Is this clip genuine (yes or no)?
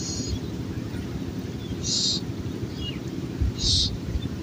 no